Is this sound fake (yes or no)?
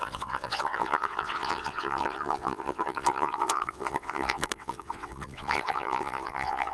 yes